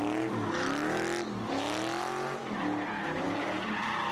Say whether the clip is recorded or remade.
recorded